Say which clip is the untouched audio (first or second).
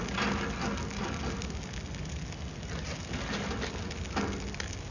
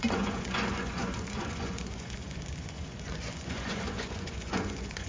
first